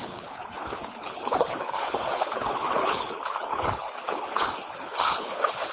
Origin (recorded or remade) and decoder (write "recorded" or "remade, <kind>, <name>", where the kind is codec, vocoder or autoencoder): remade, codec, HILCodec